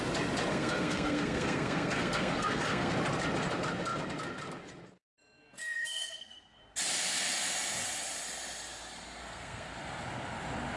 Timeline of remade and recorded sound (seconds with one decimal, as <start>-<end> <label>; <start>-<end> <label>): 0.0-0.5 recorded; 0.5-2.9 remade; 2.9-5.6 recorded; 5.6-6.6 remade; 6.6-9.2 recorded; 9.2-9.7 remade; 9.7-10.8 recorded